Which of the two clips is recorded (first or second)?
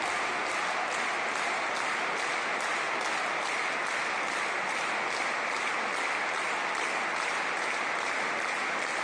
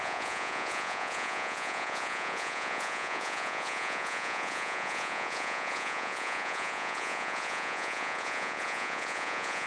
first